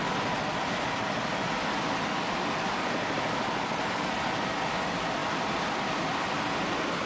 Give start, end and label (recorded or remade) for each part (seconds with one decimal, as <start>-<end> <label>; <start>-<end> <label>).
0.0-7.1 recorded